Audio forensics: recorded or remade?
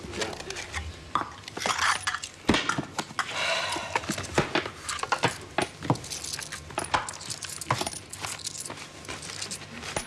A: recorded